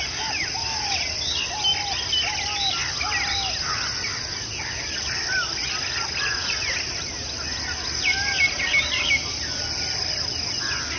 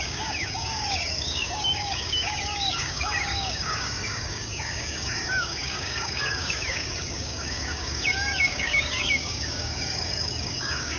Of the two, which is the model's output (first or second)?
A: second